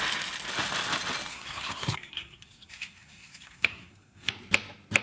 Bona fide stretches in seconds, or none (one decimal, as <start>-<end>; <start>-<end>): 0.0-1.3; 4.3-5.0